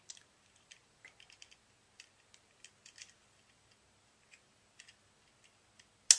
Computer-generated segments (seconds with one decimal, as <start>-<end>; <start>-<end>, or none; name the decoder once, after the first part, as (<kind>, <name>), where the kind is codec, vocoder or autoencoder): none